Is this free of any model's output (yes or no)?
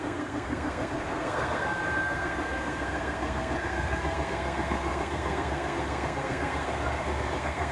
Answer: no